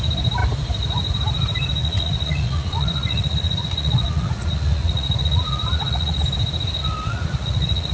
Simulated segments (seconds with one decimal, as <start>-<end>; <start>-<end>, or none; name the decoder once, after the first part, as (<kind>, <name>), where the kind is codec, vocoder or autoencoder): 1.8-6.2 (vocoder, Vocos); 6.8-7.9

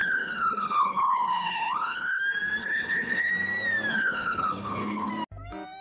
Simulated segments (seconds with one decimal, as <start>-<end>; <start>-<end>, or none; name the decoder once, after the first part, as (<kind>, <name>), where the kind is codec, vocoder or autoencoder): 0.0-2.2 (codec, HILCodec); 2.6-3.3; 3.9-5.1

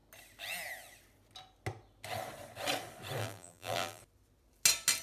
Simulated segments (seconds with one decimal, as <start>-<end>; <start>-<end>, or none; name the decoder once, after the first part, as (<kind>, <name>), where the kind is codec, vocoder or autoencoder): 3.2-4.0 (vocoder, BigVGAN v2)

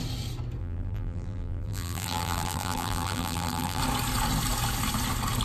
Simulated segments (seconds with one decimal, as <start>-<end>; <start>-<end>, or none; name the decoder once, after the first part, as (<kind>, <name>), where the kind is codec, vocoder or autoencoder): 0.6-3.8 (vocoder, BigVGAN v2)

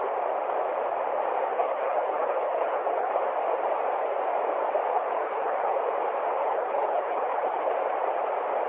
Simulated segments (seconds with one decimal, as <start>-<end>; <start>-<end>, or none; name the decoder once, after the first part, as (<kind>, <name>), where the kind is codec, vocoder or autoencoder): 1.5-3.1 (codec, HILCodec); 4.9-5.8; 6.4-7.7

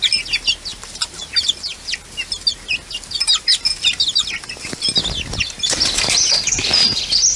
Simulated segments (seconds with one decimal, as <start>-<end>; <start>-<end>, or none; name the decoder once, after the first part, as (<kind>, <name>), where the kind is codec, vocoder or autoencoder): none

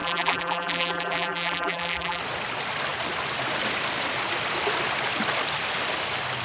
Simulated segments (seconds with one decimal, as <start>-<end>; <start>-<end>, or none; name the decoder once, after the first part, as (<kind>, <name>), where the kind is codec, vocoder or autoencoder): 0.0-2.2 (vocoder, BigVGAN v2)

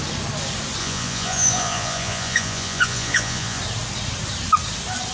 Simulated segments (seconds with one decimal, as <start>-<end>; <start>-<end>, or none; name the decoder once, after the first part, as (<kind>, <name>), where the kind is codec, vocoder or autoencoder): 0.8-3.6 (vocoder, Vocos)